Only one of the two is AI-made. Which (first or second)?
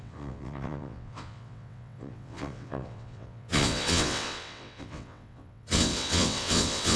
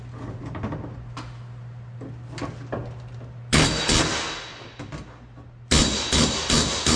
first